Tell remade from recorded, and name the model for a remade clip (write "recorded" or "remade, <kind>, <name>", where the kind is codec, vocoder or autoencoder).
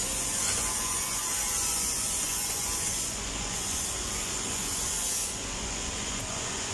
remade, vocoder, Vocos